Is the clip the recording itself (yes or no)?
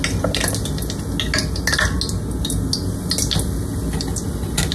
yes